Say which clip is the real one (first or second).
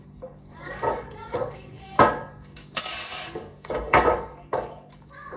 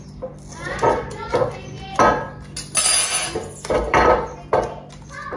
second